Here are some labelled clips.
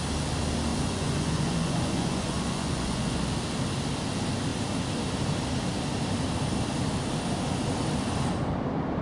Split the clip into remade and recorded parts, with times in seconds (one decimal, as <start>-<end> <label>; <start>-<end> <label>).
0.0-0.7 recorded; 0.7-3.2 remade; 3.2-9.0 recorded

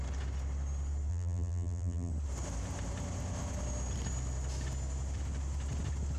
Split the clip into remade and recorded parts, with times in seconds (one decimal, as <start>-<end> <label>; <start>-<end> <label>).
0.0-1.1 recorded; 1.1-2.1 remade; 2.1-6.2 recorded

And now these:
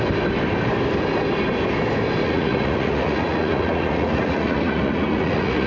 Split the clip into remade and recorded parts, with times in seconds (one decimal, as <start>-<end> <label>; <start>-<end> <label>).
0.0-2.2 recorded; 2.2-5.7 remade